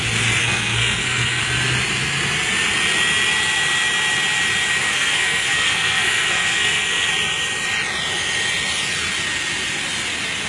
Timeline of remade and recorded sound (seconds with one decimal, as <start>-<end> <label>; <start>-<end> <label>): 0.0-0.4 recorded; 0.4-1.4 remade; 1.4-4.8 recorded; 4.8-7.1 remade; 7.1-10.5 recorded

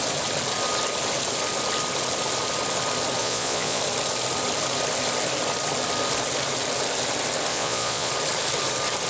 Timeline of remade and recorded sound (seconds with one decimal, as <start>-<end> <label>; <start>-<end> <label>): 0.0-3.2 recorded; 3.2-3.8 remade; 3.8-7.5 recorded; 7.5-8.1 remade; 8.1-9.1 recorded

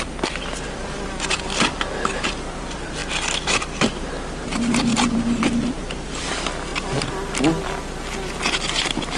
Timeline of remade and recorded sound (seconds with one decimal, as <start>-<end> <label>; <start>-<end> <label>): 0.0-3.0 remade; 3.0-4.3 recorded; 4.3-6.7 remade; 6.7-9.2 recorded

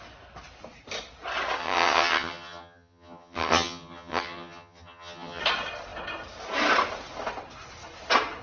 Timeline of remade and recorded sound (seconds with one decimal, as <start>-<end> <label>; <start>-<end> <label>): 0.0-1.6 recorded; 1.6-5.4 remade; 5.4-8.4 recorded

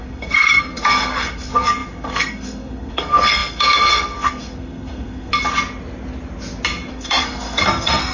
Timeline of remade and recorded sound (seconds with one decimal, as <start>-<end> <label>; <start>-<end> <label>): 0.0-5.3 remade; 5.3-6.9 recorded; 6.9-8.1 remade